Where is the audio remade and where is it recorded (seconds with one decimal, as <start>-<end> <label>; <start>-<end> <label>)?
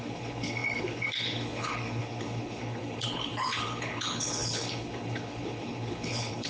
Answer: 0.0-6.5 remade